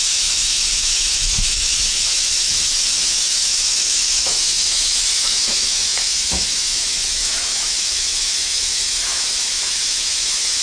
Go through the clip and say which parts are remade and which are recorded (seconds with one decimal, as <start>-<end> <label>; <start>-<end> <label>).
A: 0.0-10.6 remade